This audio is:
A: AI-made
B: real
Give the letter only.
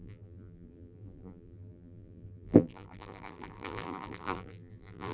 A